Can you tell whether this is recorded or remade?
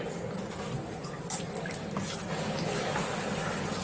recorded